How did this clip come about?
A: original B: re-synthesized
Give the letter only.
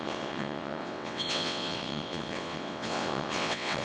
B